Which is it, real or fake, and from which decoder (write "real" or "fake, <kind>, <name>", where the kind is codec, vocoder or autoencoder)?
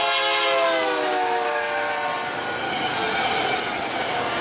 real